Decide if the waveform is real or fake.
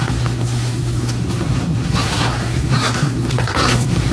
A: fake